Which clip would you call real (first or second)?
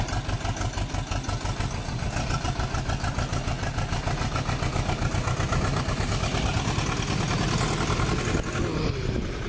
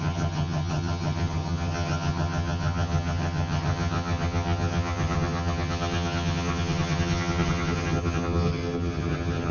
first